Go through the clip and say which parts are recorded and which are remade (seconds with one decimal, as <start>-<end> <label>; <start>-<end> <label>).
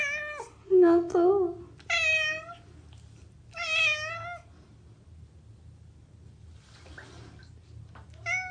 0.0-0.6 recorded; 0.6-1.3 remade; 1.3-8.5 recorded